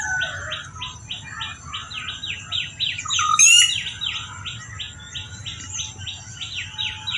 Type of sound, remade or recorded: recorded